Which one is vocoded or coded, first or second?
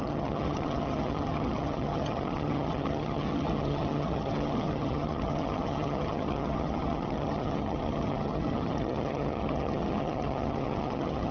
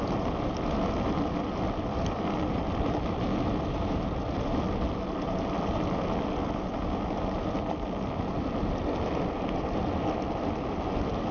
first